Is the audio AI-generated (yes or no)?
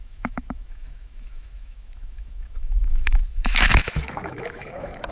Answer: yes